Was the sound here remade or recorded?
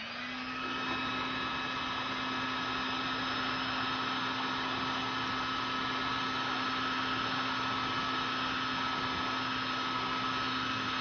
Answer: recorded